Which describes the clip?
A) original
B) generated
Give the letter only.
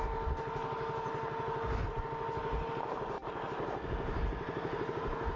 A